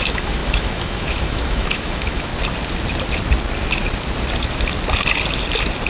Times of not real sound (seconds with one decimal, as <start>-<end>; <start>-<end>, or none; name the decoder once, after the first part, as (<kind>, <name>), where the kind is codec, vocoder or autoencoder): 0.0-2.3 (autoencoder, DAC-VAE)